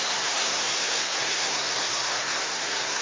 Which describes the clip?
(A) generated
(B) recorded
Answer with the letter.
A